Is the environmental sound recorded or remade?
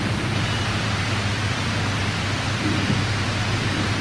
remade